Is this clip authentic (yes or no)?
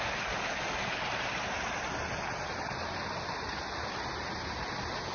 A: yes